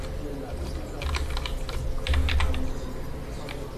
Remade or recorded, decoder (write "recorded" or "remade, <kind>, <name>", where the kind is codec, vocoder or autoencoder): recorded